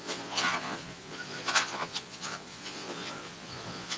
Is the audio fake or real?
fake